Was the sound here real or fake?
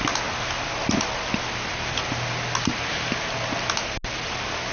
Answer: real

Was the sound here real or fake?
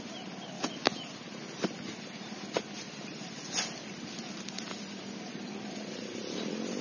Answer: real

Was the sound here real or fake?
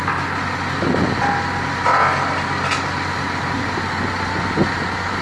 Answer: real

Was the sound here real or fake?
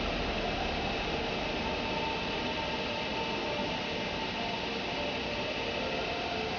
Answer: real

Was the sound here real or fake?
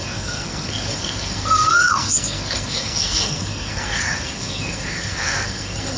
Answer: fake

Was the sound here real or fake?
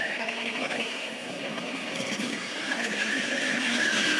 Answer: fake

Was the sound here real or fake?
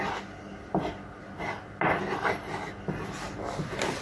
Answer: real